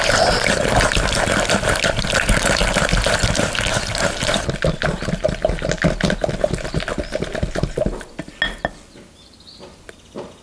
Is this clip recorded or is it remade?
recorded